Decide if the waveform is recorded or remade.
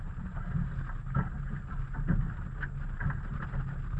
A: recorded